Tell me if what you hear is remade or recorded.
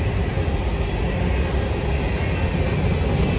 recorded